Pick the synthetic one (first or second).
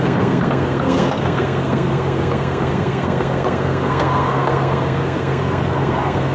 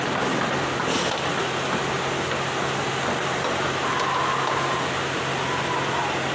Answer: first